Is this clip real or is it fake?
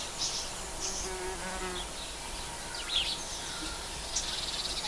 real